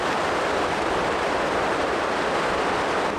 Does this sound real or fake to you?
real